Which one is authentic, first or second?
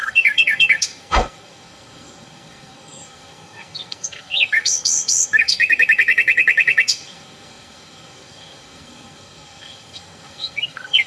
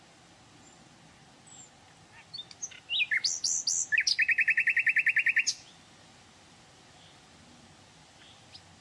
second